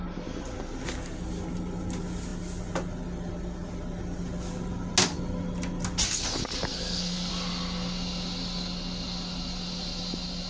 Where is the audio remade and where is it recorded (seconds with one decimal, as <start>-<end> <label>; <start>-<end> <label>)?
0.0-6.7 recorded; 6.7-7.3 remade; 7.3-10.5 recorded